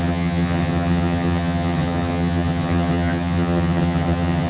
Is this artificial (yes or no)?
yes